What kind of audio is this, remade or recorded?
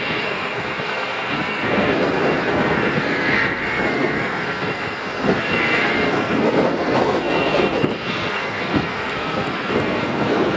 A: remade